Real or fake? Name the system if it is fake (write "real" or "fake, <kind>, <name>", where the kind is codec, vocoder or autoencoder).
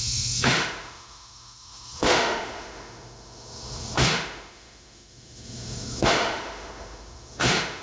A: fake, autoencoder, DAC-VAE